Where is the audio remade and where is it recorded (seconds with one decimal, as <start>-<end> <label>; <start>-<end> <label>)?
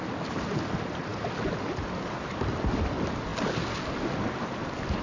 0.0-5.0 recorded